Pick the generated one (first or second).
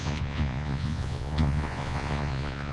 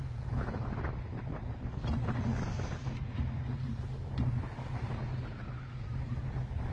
first